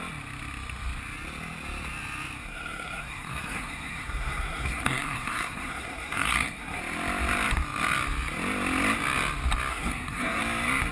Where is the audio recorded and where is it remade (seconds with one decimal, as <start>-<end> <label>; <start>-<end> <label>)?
0.0-2.4 recorded; 2.4-6.8 remade; 6.8-9.7 recorded; 9.7-10.4 remade; 10.4-10.9 recorded